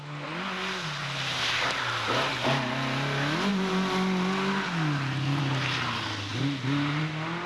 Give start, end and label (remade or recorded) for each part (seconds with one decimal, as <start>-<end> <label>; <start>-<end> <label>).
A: 0.0-1.0 recorded; 1.0-1.9 remade; 1.9-6.3 recorded; 6.3-7.0 remade; 7.0-7.5 recorded